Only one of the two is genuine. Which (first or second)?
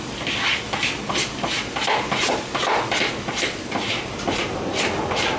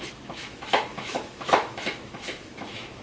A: first